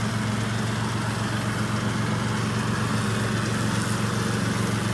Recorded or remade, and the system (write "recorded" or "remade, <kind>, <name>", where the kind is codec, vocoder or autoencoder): recorded